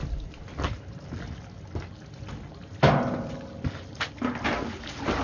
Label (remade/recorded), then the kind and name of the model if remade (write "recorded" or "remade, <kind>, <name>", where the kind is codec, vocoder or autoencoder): recorded